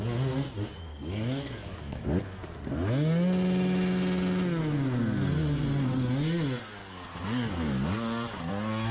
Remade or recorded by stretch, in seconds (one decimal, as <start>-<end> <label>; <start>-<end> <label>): 0.0-0.9 recorded; 0.9-2.0 remade; 2.0-6.8 recorded; 6.8-8.5 remade; 8.5-8.9 recorded